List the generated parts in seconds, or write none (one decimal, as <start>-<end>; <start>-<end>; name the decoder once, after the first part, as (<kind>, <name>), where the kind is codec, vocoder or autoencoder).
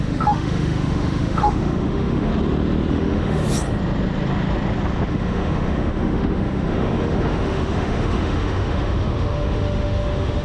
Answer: 0.0-2.3 (autoencoder, DAC-VAE); 2.9-3.4; 5.1-10.4